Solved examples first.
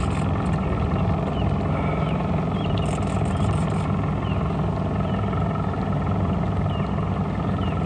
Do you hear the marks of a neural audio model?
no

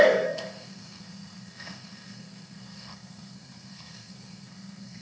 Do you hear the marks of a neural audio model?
yes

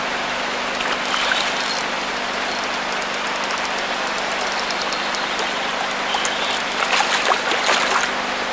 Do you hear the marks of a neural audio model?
no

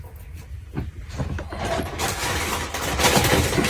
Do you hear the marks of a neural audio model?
no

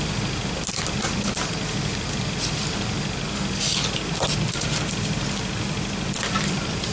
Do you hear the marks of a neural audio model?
no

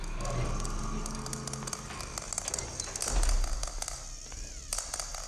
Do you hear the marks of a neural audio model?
no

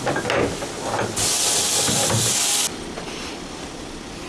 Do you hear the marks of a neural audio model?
no